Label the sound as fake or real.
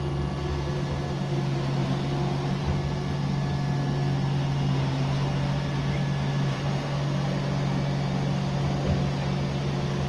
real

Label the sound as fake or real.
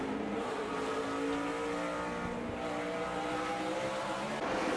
real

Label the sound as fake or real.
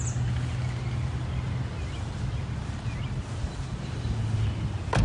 real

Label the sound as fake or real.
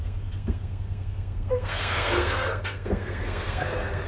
fake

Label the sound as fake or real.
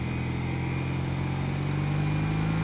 real